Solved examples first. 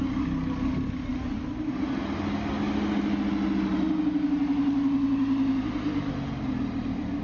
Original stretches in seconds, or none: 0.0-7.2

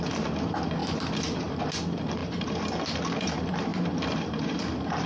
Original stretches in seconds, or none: none

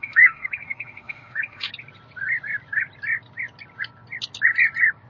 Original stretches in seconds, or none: 1.7-5.1

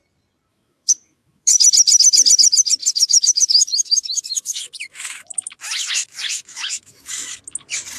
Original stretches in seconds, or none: 0.0-0.5; 1.6-2.8; 7.4-8.0

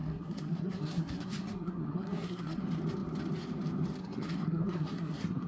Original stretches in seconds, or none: 2.6-4.0

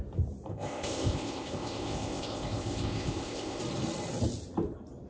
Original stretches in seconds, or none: 0.0-0.5; 3.6-5.1